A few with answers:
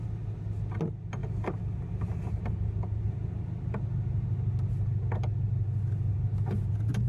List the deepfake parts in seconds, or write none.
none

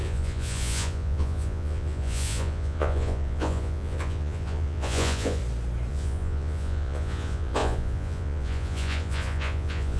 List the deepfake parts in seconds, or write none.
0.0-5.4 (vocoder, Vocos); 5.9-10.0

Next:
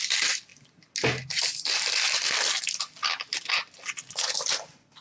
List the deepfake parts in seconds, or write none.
none

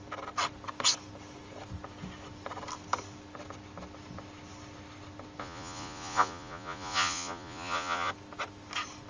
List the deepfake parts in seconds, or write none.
5.4-8.1 (vocoder, Vocos)

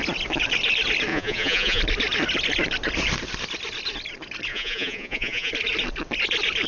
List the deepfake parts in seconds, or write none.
1.1-1.8 (vocoder, Vocos); 4.5-5.5

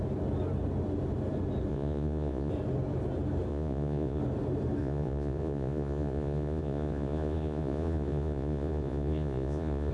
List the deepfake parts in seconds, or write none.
1.7-2.5 (vocoder, Vocos); 3.5-4.2; 4.8-9.9

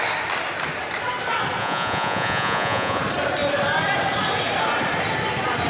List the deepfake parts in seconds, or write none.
1.6-3.0 (vocoder, Vocos)

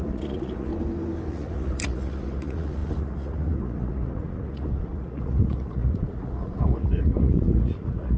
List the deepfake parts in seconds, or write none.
0.0-0.7 (vocoder, Vocos); 1.3-8.2